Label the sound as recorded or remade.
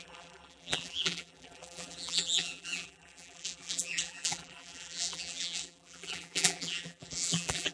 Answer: remade